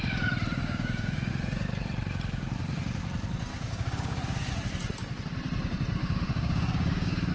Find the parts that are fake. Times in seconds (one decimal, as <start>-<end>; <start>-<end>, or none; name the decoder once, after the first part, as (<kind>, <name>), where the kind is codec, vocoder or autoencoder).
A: 0.6-1.3 (codec, DAC); 3.5-4.5; 6.0-7.3